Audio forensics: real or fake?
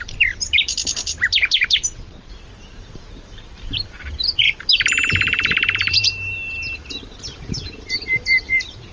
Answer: fake